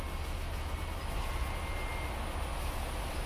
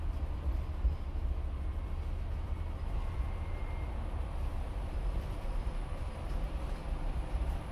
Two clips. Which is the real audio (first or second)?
first